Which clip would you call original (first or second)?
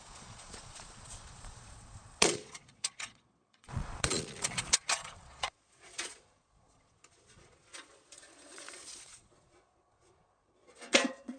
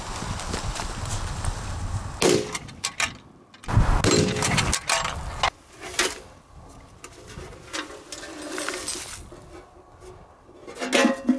second